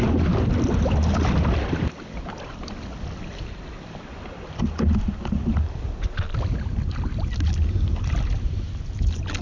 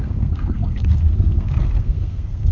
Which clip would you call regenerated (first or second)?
second